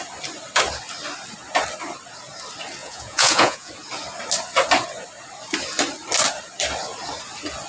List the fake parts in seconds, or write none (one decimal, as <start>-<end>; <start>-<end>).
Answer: 2.8-3.7